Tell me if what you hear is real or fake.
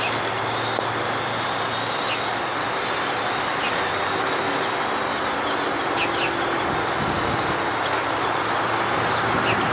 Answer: real